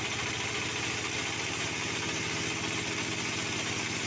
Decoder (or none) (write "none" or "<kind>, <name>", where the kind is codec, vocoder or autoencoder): none